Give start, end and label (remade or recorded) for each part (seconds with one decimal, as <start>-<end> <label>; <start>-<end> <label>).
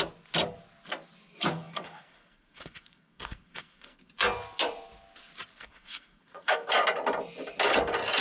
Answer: 0.0-1.5 recorded; 1.5-4.1 remade; 4.1-5.5 recorded; 5.5-6.7 remade; 6.7-8.2 recorded